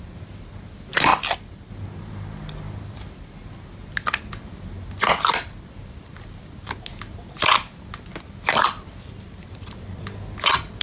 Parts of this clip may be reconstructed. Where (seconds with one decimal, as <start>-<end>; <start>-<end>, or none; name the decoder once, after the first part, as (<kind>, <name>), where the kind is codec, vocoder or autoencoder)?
none